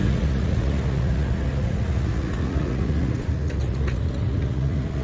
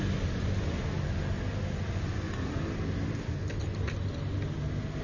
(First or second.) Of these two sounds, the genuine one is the second